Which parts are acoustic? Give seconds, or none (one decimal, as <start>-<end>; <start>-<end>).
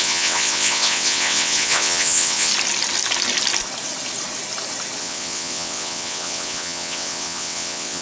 2.5-5.0